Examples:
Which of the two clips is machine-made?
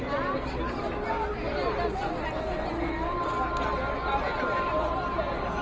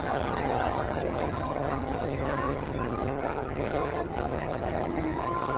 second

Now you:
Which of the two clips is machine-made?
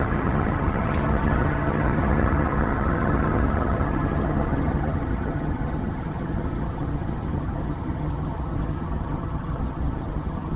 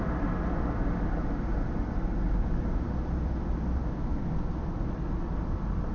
first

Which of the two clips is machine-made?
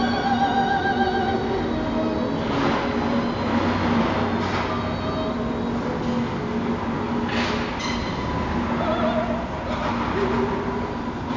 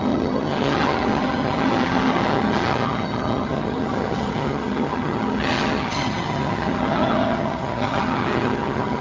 second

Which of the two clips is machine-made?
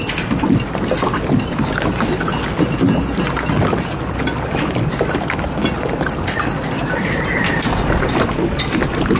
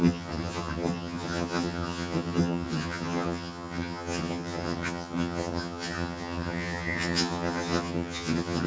second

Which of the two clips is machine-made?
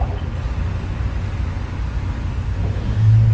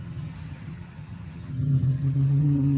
second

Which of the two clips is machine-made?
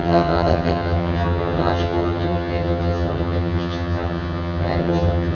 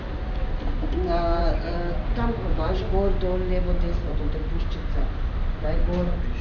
first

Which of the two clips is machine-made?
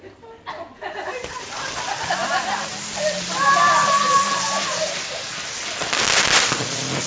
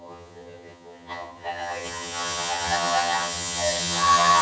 second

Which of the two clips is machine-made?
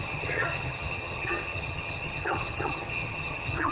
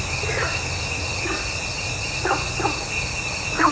first